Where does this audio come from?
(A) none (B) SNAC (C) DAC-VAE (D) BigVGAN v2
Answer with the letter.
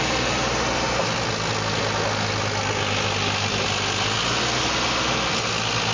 A